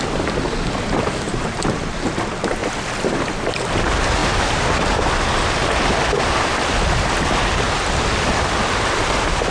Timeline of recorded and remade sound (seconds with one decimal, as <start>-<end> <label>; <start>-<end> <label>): 0.0-9.5 recorded